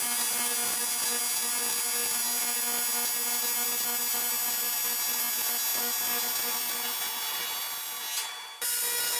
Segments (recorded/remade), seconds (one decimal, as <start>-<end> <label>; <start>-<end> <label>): 0.0-9.2 recorded